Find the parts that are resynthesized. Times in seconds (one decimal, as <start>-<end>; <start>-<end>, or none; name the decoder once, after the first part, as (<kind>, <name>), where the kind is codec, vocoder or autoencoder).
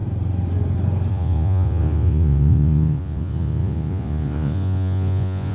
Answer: 1.1-5.5 (vocoder, Vocos)